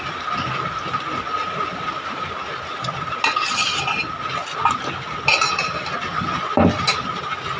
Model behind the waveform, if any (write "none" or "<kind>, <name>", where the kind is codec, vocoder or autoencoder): none